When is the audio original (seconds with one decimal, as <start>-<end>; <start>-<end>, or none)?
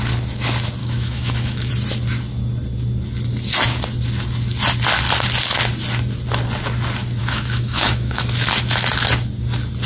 0.0-0.8; 1.7-7.2; 8.2-9.9